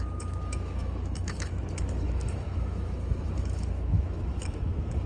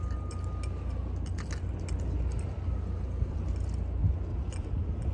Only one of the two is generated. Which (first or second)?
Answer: first